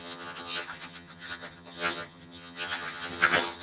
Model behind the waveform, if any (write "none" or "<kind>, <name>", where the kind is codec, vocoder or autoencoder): vocoder, HiFi-GAN